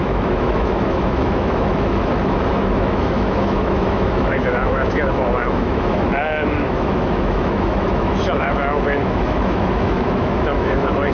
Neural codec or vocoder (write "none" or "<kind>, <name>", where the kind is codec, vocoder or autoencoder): autoencoder, DAC-VAE